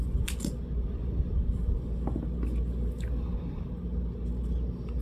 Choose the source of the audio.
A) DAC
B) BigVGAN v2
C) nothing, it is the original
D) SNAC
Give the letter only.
C